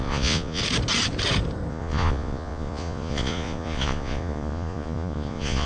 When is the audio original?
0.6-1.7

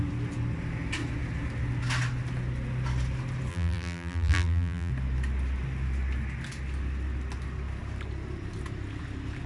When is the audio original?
0.0-3.5; 4.9-9.5

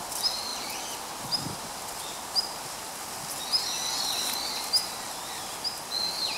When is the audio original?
0.0-6.4

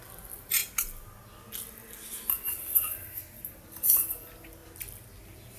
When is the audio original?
0.0-5.6

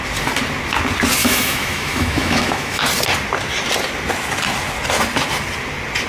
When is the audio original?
0.0-1.2; 2.8-6.1

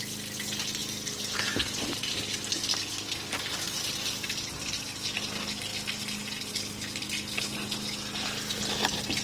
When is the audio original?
0.0-9.2